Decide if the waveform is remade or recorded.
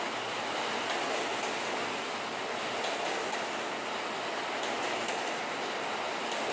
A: recorded